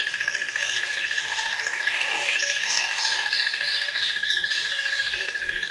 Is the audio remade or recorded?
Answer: remade